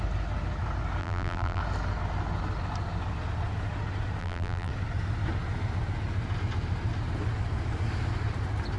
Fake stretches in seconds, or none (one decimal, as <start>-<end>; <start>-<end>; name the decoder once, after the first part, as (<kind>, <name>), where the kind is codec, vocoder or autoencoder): 1.0-1.6 (vocoder, BigVGAN v2); 4.2-4.7